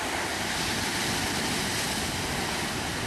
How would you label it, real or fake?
real